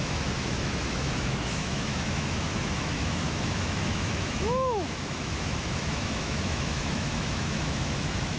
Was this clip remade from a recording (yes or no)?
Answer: yes